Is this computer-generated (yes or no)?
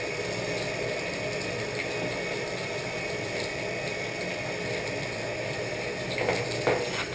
no